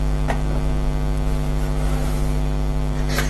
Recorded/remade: recorded